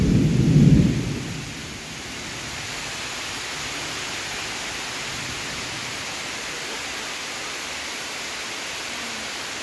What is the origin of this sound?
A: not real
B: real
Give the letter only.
B